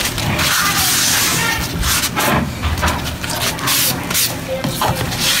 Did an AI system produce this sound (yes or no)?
no